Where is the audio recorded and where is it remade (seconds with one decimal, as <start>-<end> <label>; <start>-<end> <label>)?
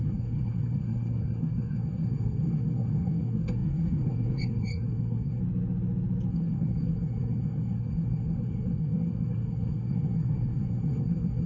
0.0-5.4 remade; 5.4-6.3 recorded; 6.3-11.5 remade